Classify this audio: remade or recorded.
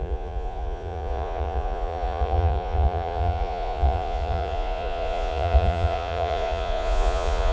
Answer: remade